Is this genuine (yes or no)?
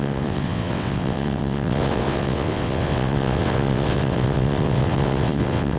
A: no